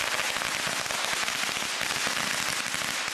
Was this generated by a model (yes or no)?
no